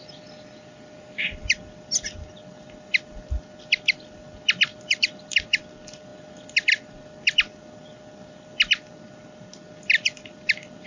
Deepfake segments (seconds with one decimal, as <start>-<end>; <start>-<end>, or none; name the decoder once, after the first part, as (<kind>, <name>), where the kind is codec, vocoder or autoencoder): none